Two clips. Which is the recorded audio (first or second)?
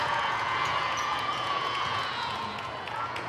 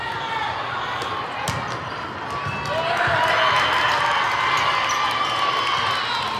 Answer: second